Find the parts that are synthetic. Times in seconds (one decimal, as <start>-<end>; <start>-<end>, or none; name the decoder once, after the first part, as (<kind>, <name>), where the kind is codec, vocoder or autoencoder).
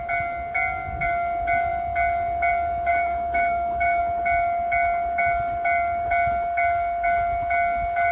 2.9-4.0 (autoencoder, DAC-VAE)